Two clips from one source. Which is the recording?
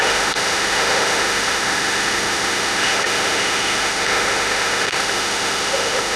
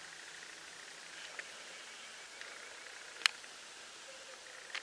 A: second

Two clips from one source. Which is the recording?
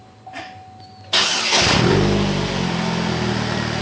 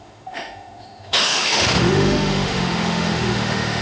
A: first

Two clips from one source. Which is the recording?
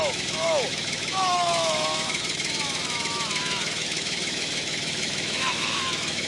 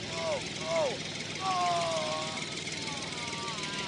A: second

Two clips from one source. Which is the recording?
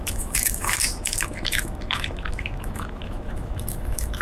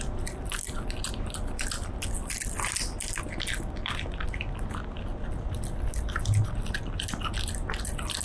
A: second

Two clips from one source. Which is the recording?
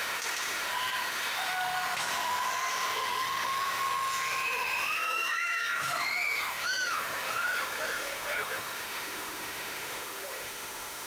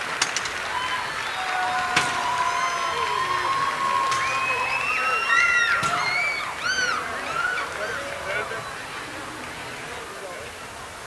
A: second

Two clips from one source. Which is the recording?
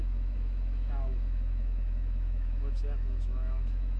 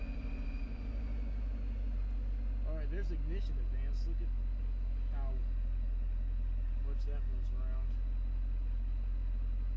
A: second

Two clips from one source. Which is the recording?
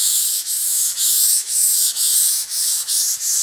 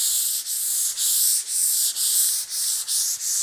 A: second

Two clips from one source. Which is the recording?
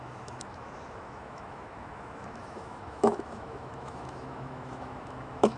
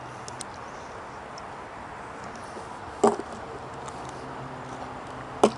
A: second